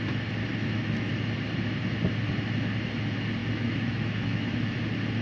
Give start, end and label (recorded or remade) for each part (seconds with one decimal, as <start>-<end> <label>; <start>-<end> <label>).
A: 0.0-0.5 recorded; 0.5-1.1 remade; 1.1-3.4 recorded; 3.4-4.8 remade; 4.8-5.2 recorded